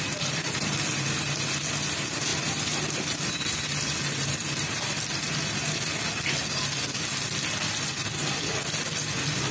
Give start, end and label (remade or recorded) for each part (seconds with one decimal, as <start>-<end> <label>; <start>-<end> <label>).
0.0-9.5 recorded